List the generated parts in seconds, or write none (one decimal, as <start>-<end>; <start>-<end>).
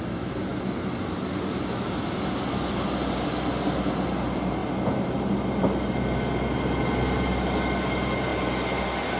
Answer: none